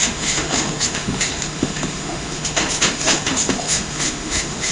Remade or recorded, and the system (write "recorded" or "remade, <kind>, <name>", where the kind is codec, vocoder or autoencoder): remade, autoencoder, DAC-VAE